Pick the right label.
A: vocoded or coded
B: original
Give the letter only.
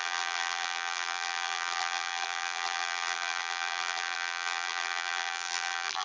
A